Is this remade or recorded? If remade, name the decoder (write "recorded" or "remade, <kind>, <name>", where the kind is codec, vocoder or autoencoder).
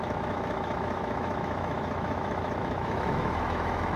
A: remade, autoencoder, DAC-VAE